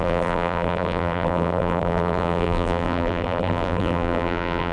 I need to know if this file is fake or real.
fake